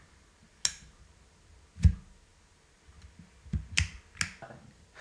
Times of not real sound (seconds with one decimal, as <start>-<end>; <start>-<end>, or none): none

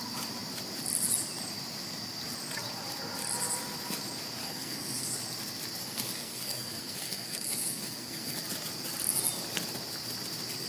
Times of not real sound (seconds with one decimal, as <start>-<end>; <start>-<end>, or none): 4.4-5.1; 5.8-8.4

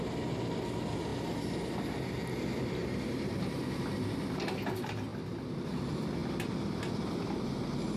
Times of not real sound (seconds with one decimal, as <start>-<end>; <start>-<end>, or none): 6.2-6.8

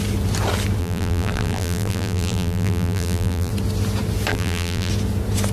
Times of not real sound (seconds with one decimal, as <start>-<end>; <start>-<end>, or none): 0.8-3.5; 4.3-4.9